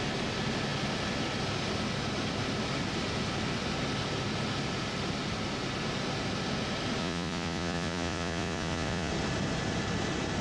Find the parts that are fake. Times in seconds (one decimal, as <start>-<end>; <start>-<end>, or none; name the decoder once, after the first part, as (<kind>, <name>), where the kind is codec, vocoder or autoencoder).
7.0-9.1 (vocoder, Vocos)